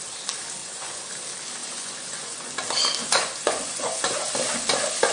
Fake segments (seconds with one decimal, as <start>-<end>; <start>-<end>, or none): 0.6-1.1; 1.6-2.5; 3.0-4.1